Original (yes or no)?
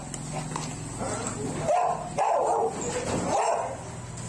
yes